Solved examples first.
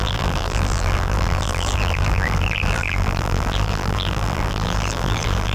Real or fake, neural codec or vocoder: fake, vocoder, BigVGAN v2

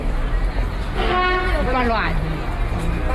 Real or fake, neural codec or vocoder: real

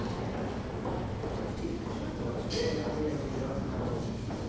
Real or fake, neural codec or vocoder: real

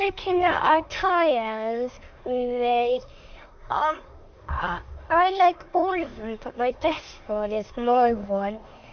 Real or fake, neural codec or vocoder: fake, codec, SNAC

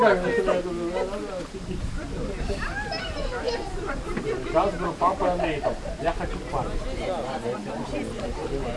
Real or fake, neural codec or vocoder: real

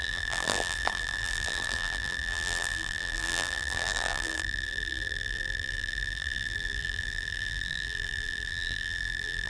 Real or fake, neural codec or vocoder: fake, vocoder, BigVGAN v2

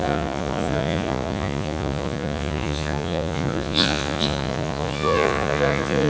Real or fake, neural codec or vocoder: fake, vocoder, Vocos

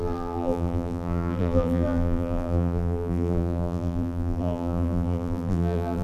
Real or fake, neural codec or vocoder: fake, vocoder, BigVGAN v2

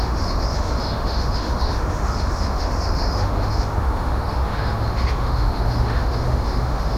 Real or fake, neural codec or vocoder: fake, autoencoder, DAC-VAE